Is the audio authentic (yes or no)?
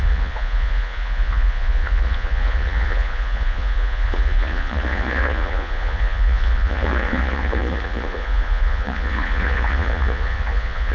no